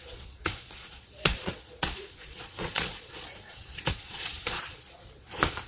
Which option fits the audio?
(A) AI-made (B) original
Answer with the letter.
A